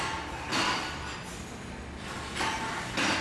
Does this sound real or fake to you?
real